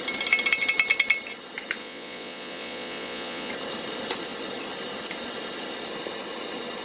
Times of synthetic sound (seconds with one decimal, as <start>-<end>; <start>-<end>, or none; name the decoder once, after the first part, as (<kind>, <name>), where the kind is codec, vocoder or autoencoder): 1.8-3.5 (vocoder, Vocos)